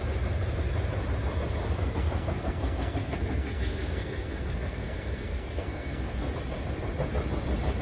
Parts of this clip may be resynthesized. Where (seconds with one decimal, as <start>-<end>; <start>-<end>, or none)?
1.6-6.3